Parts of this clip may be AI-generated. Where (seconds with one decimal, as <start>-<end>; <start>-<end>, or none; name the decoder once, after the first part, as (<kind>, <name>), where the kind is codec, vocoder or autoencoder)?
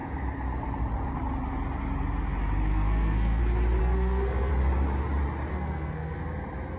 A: 2.7-3.4 (codec, SNAC); 3.8-4.5; 5.5-6.2